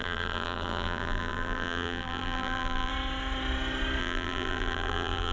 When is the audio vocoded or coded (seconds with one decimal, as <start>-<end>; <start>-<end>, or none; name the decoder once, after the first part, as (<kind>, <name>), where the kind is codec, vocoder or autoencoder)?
0.0-2.9 (vocoder, BigVGAN v2); 4.0-5.3